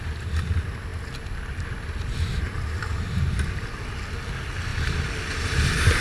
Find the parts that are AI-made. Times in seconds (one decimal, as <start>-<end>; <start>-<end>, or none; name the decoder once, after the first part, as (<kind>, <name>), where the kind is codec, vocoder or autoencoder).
none